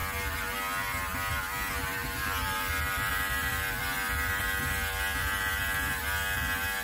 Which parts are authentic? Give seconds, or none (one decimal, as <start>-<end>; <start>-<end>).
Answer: 0.0-1.9; 4.4-5.2; 6.0-6.8